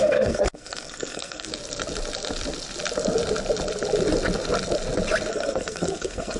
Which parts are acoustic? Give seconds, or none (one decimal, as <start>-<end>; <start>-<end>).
1.5-5.3